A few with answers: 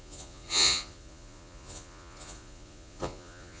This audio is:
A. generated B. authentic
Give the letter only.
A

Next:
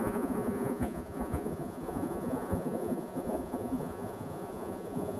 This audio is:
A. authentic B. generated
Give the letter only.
B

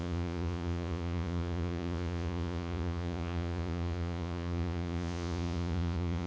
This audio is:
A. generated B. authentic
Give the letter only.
A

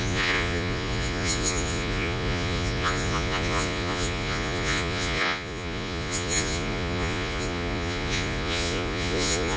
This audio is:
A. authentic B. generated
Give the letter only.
B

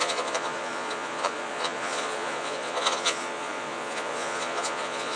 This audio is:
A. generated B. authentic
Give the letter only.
A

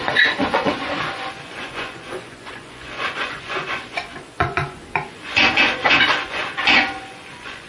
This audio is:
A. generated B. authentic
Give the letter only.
A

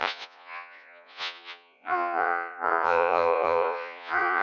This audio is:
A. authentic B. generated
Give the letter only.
B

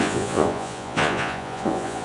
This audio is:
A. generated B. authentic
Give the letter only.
A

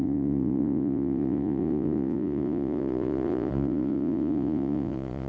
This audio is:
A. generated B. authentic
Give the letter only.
A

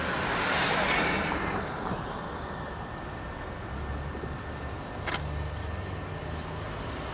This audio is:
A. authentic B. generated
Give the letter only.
A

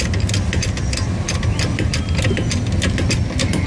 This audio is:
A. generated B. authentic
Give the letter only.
B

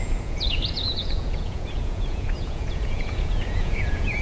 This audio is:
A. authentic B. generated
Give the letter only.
B